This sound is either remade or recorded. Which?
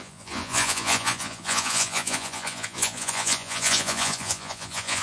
remade